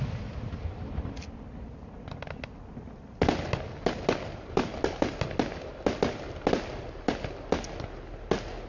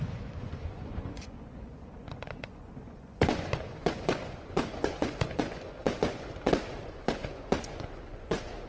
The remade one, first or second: second